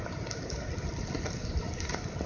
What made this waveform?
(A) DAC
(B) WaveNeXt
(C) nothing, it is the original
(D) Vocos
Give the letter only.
C